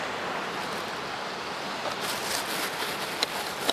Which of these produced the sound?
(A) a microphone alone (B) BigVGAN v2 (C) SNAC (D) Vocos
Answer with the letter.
A